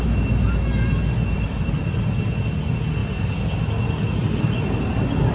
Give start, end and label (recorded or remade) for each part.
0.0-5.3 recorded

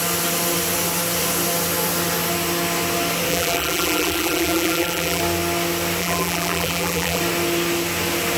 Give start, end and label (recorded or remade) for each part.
0.0-3.3 recorded; 3.3-5.2 remade; 5.2-6.0 recorded; 6.0-7.2 remade; 7.2-8.4 recorded

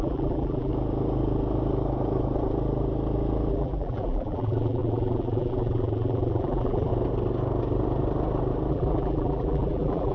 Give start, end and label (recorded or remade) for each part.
0.0-0.7 remade; 0.7-3.5 recorded; 3.5-6.9 remade; 6.9-8.7 recorded; 8.7-10.1 remade

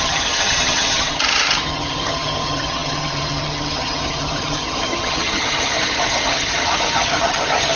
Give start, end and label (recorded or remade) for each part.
0.0-7.8 remade

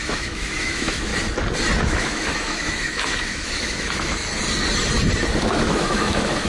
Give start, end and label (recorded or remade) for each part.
0.0-1.1 remade; 1.1-1.8 recorded; 1.8-4.2 remade; 4.2-5.4 recorded; 5.4-6.5 remade

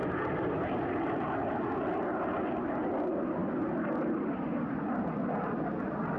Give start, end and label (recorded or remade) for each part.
0.0-6.2 recorded

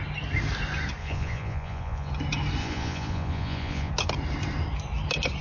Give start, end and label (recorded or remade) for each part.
0.0-1.0 recorded; 1.0-2.1 remade; 2.1-2.6 recorded; 2.6-3.9 remade; 3.9-5.4 recorded